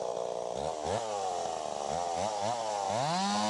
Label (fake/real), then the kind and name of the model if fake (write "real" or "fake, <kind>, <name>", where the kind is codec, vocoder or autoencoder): real